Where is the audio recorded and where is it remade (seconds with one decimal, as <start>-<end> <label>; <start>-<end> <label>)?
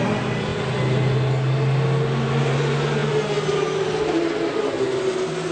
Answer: 0.0-5.5 recorded